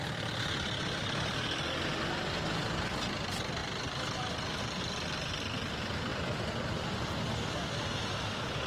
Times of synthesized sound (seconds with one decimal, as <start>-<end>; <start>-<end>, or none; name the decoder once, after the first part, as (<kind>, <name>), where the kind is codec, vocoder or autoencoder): none